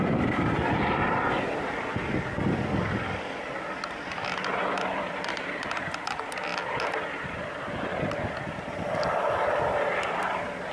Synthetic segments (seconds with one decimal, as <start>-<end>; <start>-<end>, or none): none